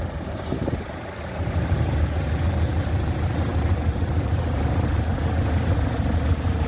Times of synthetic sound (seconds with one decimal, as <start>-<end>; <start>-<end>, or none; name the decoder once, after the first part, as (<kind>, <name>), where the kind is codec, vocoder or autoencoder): 0.0-6.7 (vocoder, BigVGAN v2)